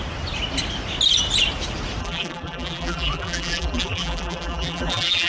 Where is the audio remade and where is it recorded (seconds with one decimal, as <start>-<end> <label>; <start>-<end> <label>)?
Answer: 0.0-2.0 recorded; 2.0-5.3 remade